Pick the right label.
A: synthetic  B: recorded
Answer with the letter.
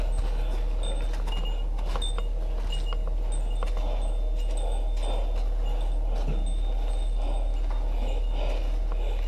B